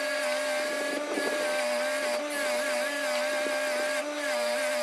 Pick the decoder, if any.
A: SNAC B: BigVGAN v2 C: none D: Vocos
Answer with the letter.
C